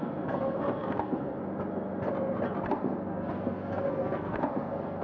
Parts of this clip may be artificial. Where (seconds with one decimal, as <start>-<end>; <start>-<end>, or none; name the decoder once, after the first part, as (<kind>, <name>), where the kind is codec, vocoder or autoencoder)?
0.0-1.4 (codec, SNAC); 2.7-5.0